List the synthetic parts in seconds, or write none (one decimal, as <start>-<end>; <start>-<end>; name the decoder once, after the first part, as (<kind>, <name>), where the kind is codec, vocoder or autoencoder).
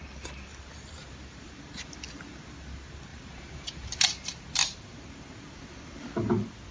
0.5-1.6 (vocoder, BigVGAN v2); 3.1-4.1; 4.6-5.3